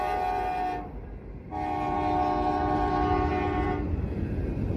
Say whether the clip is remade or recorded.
recorded